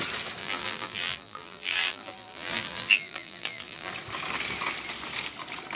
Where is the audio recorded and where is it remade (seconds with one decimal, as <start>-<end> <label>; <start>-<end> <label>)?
0.0-0.4 recorded; 0.4-3.9 remade; 3.9-5.8 recorded